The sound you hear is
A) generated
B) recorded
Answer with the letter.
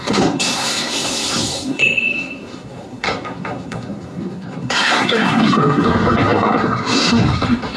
A